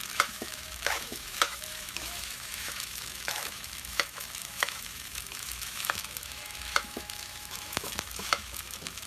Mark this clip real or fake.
fake